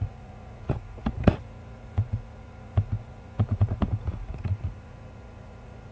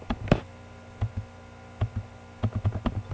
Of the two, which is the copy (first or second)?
first